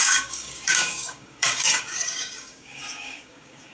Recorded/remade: remade